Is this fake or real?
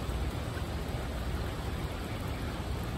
real